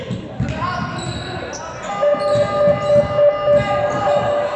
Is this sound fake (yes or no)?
no